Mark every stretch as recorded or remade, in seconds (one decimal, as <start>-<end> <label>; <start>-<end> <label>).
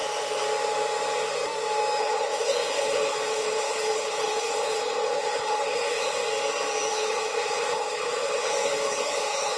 0.0-2.0 recorded; 2.0-6.2 remade; 6.2-6.9 recorded; 6.9-9.6 remade